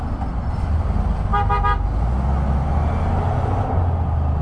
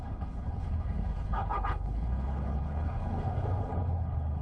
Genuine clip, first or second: first